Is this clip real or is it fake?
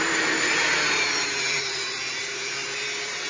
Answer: fake